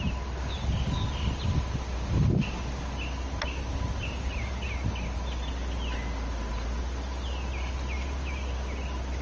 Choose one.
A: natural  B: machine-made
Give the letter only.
A